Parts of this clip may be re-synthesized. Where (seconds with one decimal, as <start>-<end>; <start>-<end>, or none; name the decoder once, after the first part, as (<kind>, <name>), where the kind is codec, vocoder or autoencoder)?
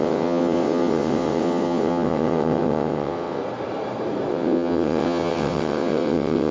0.0-3.4 (vocoder, WaveNeXt); 4.3-6.5